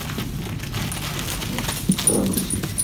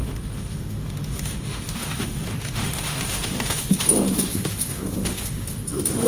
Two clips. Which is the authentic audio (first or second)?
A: first